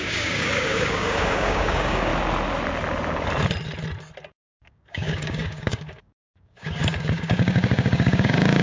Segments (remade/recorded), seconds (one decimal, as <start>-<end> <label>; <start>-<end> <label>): 0.0-2.1 remade; 2.1-4.3 recorded; 4.3-8.6 remade